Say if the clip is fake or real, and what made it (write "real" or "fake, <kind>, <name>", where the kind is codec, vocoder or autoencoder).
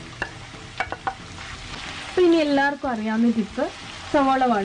real